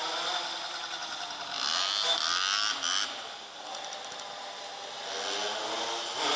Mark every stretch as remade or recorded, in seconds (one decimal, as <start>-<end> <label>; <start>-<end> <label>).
0.0-6.4 recorded